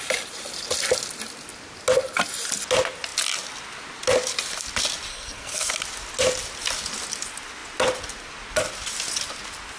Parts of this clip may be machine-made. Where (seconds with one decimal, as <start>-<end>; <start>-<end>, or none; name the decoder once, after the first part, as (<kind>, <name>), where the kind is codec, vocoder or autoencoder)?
5.1-5.7 (codec, SNAC)